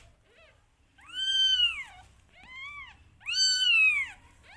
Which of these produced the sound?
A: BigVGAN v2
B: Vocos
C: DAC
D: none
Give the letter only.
D